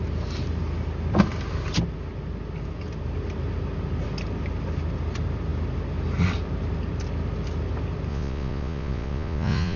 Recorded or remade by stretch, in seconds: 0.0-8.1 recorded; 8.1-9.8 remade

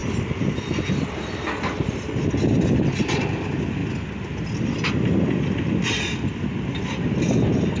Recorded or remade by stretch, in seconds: 0.0-7.8 recorded